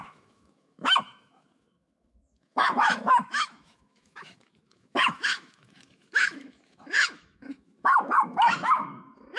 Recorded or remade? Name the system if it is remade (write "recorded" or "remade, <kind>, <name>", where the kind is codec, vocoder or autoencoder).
remade, autoencoder, DAC-VAE